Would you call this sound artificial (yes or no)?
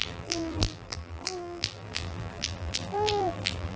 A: yes